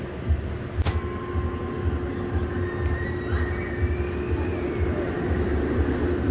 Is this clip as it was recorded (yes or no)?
yes